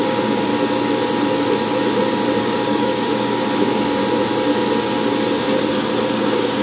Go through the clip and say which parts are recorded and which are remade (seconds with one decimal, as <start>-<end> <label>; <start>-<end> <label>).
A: 0.0-0.5 remade; 0.5-2.4 recorded; 2.4-4.0 remade; 4.0-6.1 recorded; 6.1-6.6 remade